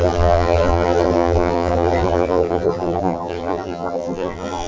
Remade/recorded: remade